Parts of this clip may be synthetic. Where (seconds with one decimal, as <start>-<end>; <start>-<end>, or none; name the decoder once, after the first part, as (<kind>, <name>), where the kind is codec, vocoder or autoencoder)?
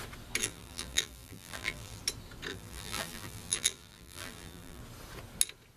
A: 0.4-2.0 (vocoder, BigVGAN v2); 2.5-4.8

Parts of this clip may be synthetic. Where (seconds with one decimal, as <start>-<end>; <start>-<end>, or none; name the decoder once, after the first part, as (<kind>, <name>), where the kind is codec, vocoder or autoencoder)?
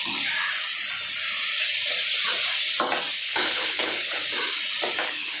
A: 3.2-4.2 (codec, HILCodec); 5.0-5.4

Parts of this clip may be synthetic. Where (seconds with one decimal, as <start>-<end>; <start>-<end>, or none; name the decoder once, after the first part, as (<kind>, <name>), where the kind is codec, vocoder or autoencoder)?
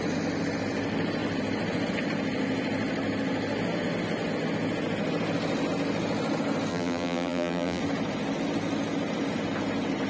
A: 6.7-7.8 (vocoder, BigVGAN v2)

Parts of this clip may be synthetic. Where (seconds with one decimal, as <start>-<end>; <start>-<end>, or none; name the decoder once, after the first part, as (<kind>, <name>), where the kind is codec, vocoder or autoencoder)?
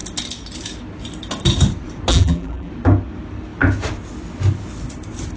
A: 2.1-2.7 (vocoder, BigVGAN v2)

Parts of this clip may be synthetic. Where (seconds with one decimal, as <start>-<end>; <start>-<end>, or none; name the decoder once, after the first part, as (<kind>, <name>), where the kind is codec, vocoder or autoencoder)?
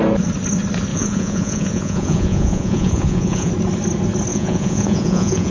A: 0.9-3.5 (vocoder, Vocos); 4.3-5.5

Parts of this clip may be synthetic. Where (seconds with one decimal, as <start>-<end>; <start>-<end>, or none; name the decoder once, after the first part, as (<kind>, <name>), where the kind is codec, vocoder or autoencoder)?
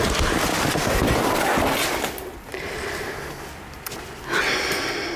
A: none